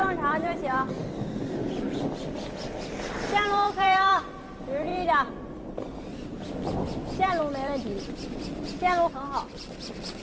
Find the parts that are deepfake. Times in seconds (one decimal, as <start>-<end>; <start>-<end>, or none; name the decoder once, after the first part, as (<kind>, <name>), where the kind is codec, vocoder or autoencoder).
0.0-4.2 (vocoder, BigVGAN v2); 4.9-8.1